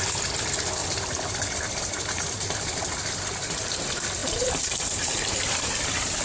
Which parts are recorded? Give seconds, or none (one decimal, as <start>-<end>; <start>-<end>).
0.0-0.8; 3.2-4.2